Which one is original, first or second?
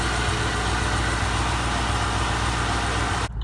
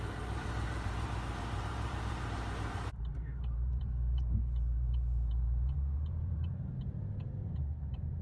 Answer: first